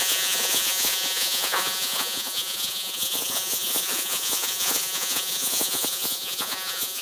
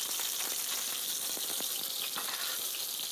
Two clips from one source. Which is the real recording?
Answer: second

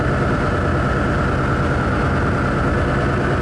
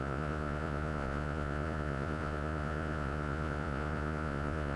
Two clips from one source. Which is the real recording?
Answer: first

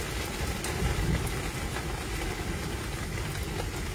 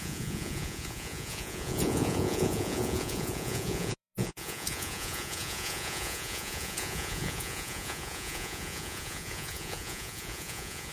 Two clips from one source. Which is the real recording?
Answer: first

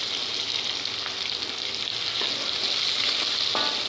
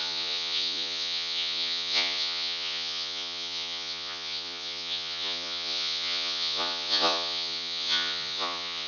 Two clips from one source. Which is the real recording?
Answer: first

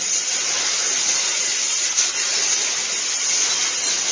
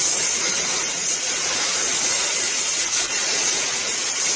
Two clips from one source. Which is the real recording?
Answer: first